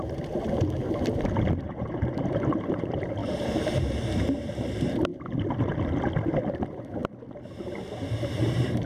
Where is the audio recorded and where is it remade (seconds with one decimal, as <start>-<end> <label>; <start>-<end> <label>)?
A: 0.0-5.1 remade; 5.1-6.5 recorded; 6.5-7.0 remade; 7.0-8.2 recorded; 8.2-8.9 remade